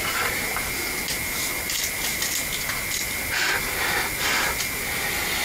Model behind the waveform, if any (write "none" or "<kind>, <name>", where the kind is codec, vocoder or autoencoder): none